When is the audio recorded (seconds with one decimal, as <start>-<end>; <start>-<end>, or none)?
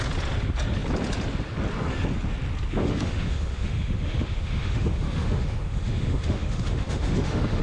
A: 0.0-2.8